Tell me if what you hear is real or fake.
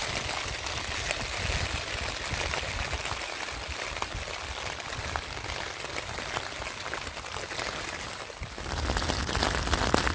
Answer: real